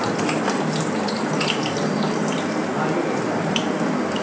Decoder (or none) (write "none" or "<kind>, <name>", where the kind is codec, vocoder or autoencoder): none